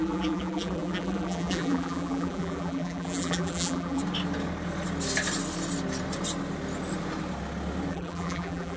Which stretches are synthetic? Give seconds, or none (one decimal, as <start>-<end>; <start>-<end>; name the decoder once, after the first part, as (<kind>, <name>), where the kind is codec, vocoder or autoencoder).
0.0-4.0 (vocoder, BigVGAN v2); 7.9-8.8